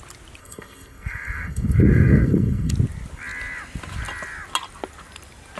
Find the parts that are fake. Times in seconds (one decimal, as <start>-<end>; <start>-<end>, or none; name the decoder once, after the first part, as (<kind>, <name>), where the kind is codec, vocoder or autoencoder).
0.4-2.7 (codec, SNAC)